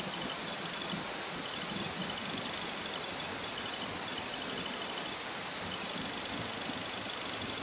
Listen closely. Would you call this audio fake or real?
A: real